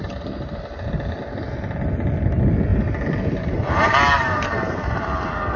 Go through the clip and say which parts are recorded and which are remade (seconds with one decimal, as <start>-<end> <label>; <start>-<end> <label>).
0.0-0.5 remade; 0.5-2.7 recorded; 2.7-5.6 remade